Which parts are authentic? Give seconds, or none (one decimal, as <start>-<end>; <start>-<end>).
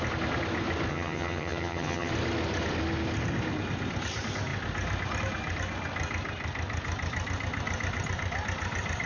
0.0-0.9; 2.1-9.1